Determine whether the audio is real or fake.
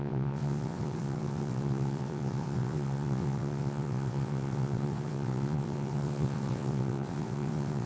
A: fake